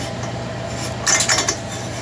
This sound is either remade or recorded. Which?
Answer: recorded